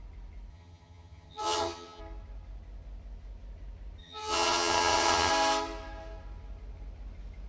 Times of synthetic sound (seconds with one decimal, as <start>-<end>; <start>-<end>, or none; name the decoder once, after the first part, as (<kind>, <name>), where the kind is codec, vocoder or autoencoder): 0.5-2.0 (vocoder, HiFi-GAN); 4.0-5.3